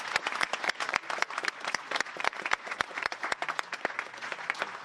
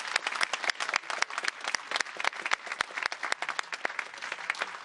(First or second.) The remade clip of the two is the first